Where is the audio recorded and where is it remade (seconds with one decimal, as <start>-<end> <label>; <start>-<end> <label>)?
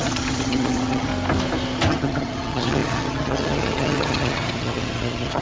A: 0.0-1.1 remade; 1.1-1.9 recorded; 1.9-5.4 remade